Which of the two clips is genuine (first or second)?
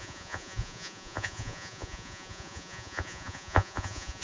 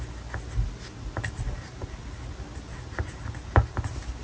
second